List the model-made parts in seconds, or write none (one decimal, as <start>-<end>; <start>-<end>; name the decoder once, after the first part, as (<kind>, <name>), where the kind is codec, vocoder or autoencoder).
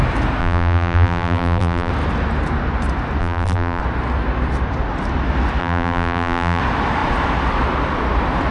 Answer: 0.4-1.9 (vocoder, BigVGAN v2); 3.2-3.8; 5.6-6.6